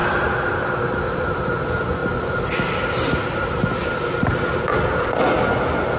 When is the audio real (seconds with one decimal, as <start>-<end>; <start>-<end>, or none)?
0.6-6.0